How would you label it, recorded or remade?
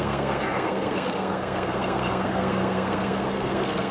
remade